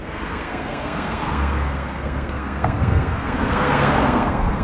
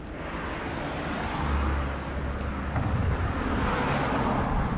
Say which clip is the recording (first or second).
second